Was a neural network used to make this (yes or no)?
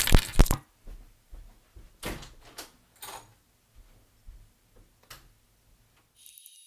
no